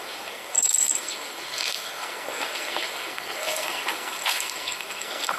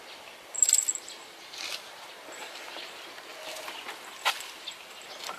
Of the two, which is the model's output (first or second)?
first